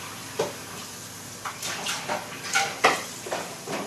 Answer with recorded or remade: recorded